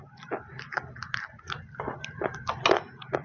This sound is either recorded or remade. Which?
recorded